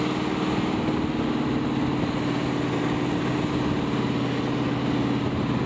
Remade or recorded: recorded